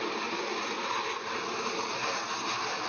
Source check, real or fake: real